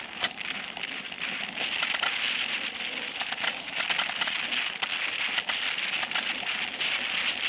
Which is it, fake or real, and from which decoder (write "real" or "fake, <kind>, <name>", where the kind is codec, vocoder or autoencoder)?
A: fake, vocoder, BigVGAN v2